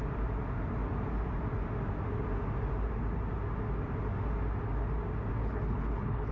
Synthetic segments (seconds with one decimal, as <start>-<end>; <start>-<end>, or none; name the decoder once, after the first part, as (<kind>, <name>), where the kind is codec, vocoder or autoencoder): 5.4-6.3 (codec, HILCodec)